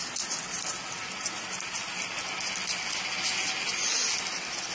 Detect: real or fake real